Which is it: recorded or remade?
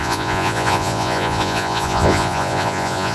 remade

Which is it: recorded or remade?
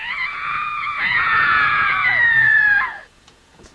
remade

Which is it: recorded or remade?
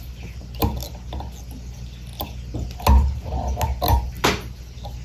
recorded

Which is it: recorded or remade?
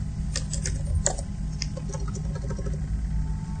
recorded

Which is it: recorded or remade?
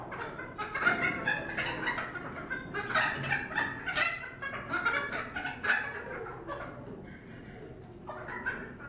recorded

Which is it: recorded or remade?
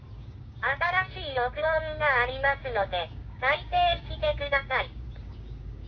remade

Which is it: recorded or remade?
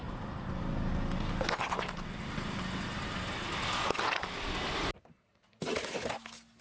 recorded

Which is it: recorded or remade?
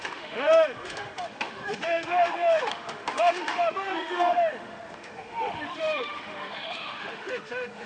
remade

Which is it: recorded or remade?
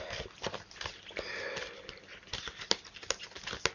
recorded